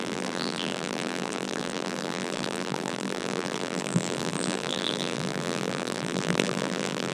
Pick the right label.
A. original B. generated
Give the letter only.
B